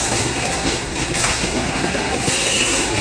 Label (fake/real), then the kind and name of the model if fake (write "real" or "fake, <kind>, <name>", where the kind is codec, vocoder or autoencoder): fake, codec, SNAC